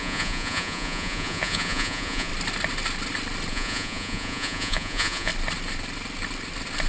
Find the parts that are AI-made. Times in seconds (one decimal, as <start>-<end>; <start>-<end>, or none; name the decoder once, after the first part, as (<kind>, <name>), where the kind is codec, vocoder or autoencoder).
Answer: 0.0-2.3 (vocoder, Vocos); 3.5-5.3